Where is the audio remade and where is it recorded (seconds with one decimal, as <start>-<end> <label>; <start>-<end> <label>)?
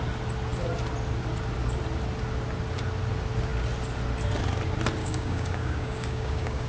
0.0-5.0 recorded; 5.0-6.7 remade